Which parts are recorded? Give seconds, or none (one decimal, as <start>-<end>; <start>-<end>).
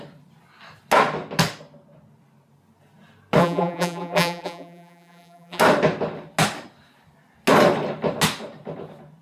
0.0-3.4; 5.6-9.2